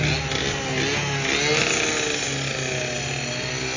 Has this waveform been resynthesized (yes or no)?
no